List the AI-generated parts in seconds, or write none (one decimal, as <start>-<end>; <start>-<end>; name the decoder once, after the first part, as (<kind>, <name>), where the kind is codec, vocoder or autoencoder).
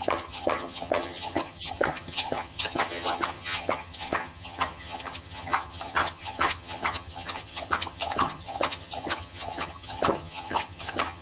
0.0-11.2 (vocoder, HiFi-GAN)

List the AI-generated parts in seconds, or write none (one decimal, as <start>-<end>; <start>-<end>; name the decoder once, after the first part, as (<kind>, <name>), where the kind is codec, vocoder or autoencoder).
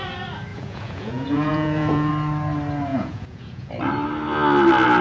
0.5-2.1 (vocoder, Vocos); 2.9-3.7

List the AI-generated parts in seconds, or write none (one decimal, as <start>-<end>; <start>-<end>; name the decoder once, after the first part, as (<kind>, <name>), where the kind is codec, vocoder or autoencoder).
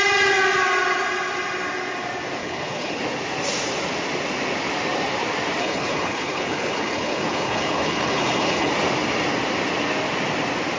2.4-3.0 (codec, HILCodec); 5.6-8.7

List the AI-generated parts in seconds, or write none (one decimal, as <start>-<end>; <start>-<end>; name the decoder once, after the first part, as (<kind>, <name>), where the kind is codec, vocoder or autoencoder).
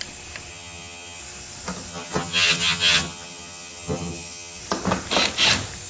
0.5-1.2 (vocoder, HiFi-GAN); 1.9-4.6